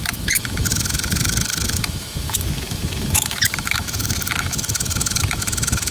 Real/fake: fake